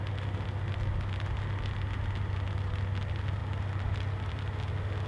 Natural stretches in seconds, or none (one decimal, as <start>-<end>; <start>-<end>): 0.0-5.1